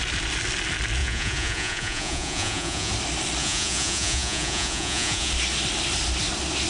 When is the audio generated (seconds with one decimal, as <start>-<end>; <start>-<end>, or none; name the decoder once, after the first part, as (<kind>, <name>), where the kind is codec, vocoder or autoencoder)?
1.0-2.9 (vocoder, Vocos); 3.4-5.3